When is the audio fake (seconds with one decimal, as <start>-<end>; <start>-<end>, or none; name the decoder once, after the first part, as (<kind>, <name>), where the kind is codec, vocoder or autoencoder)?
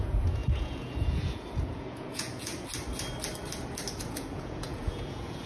0.0-2.5 (vocoder, Vocos); 3.9-5.5